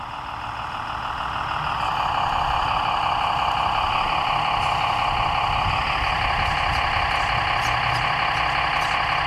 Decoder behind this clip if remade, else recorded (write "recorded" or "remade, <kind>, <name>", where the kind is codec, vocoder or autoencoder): recorded